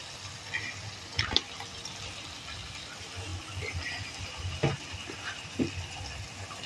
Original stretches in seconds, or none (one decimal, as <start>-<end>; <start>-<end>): 0.0-6.7